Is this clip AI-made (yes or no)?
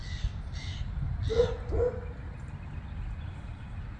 no